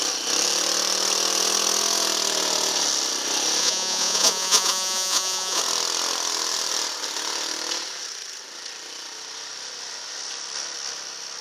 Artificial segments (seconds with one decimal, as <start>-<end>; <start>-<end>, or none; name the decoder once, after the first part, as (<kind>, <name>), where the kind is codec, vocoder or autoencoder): 3.6-5.6 (vocoder, Vocos)